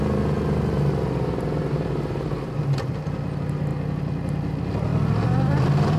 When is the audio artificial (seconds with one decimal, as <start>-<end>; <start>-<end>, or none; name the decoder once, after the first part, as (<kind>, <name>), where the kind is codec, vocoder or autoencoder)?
none